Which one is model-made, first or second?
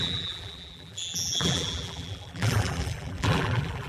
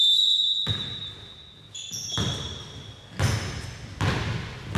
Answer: first